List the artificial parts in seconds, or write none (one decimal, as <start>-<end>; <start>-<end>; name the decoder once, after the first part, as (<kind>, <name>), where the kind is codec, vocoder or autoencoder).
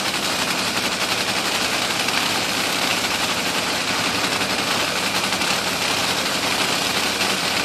2.9-4.0 (vocoder, BigVGAN v2); 6.0-6.5